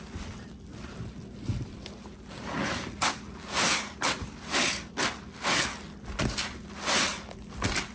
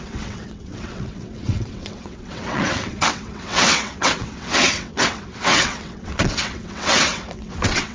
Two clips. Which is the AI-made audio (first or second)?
second